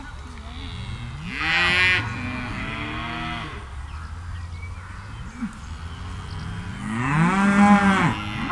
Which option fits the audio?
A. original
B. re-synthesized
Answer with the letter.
A